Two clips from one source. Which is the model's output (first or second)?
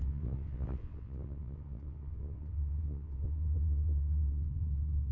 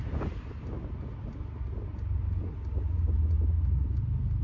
first